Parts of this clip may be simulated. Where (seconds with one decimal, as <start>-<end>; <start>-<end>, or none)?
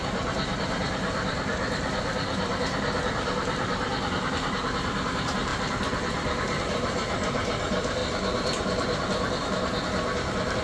0.0-10.6